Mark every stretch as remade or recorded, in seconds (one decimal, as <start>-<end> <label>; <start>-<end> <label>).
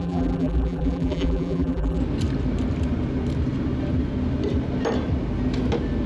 0.0-2.0 remade; 2.0-6.1 recorded